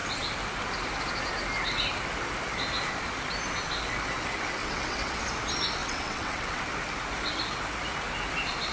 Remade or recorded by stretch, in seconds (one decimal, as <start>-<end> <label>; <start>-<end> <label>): 0.0-4.6 recorded; 4.6-5.2 remade; 5.2-5.8 recorded; 5.8-6.6 remade; 6.6-8.7 recorded